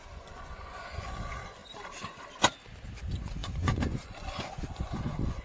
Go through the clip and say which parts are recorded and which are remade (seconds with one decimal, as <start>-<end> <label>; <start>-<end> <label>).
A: 0.0-1.6 remade; 1.6-3.0 recorded; 3.0-5.4 remade